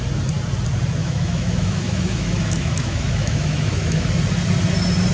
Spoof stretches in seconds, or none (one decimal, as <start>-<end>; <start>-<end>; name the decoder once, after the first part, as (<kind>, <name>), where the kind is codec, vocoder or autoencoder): 1.0-4.1 (autoencoder, DAC-VAE)